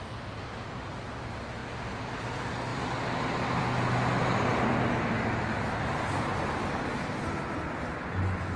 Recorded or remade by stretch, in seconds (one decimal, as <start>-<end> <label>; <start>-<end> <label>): 0.0-2.7 recorded; 2.7-3.6 remade; 3.6-8.6 recorded

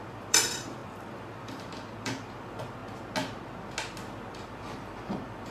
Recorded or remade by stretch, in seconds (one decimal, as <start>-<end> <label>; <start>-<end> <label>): 0.0-2.8 remade; 2.8-4.3 recorded; 4.3-5.5 remade

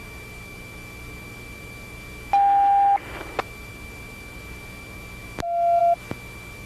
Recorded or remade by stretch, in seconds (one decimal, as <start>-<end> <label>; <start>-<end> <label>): 0.0-6.7 recorded